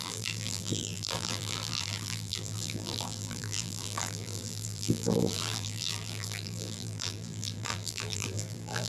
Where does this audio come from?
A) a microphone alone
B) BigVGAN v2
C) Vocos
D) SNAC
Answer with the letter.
B